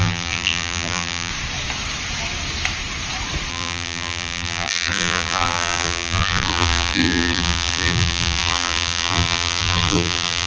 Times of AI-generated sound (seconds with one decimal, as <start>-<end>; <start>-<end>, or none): 0.0-1.3; 3.5-10.5